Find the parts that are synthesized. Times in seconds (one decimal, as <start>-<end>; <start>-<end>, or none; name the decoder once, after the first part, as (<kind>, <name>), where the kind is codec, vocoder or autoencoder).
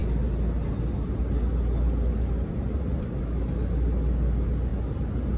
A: none